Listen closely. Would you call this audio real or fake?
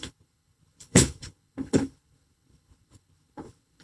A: fake